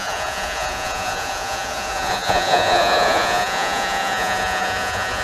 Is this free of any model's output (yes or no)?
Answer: no